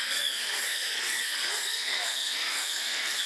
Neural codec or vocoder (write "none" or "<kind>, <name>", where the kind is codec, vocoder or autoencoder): codec, SNAC